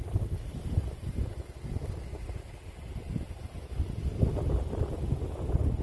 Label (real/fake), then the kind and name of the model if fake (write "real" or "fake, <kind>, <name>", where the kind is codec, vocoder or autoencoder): real